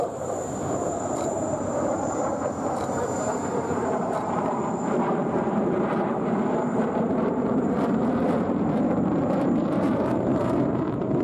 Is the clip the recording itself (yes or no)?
no